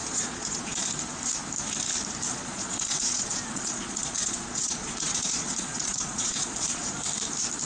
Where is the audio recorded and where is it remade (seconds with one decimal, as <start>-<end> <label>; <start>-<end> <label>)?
0.0-0.8 remade; 0.8-2.3 recorded; 2.3-6.9 remade; 6.9-7.7 recorded

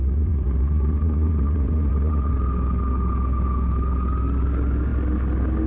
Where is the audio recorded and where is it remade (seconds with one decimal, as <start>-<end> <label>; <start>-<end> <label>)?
0.0-2.3 remade; 2.3-5.7 recorded

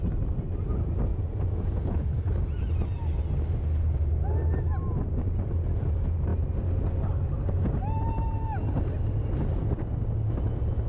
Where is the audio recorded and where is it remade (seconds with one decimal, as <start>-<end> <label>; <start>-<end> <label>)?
0.0-1.1 recorded; 1.1-2.1 remade; 2.1-10.9 recorded

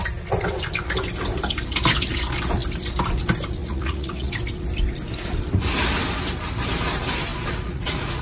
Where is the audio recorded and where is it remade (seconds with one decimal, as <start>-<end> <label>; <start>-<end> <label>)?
0.0-3.6 recorded; 3.6-4.3 remade; 4.3-7.3 recorded; 7.3-8.2 remade

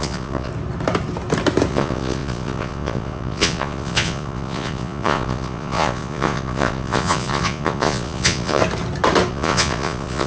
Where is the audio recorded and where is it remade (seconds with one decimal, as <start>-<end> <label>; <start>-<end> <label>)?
0.0-0.5 remade; 0.5-1.7 recorded; 1.7-8.6 remade; 8.6-9.3 recorded; 9.3-10.3 remade

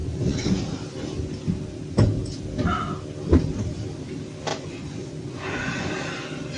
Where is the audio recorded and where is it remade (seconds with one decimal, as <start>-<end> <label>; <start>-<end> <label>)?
0.0-0.6 remade; 0.6-4.5 recorded; 4.5-5.9 remade; 5.9-6.6 recorded